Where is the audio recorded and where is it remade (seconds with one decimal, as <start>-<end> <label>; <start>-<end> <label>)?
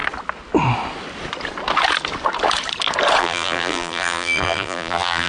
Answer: 0.0-3.2 recorded; 3.2-5.3 remade